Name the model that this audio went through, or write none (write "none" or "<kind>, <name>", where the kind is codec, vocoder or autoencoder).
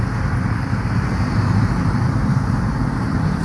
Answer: vocoder, BigVGAN v2